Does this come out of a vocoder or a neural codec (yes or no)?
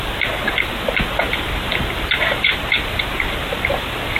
no